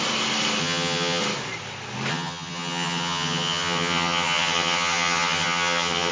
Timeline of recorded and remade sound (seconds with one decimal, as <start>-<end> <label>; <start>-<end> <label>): 0.0-0.6 recorded; 0.6-1.2 remade; 1.2-2.1 recorded; 2.1-6.1 remade